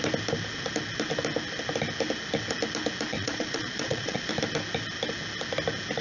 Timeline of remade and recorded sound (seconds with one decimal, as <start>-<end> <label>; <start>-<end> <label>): 0.0-3.1 recorded; 3.1-4.3 remade; 4.3-6.0 recorded